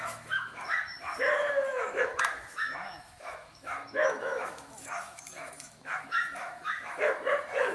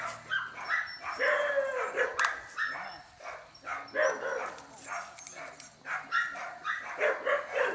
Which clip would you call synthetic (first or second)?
first